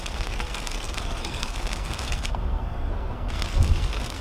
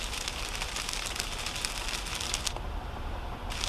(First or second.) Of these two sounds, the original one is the second